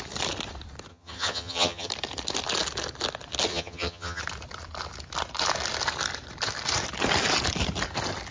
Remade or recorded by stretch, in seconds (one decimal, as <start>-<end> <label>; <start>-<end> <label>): 0.0-0.9 recorded; 0.9-1.9 remade; 1.9-3.5 recorded; 3.5-4.2 remade; 4.2-8.3 recorded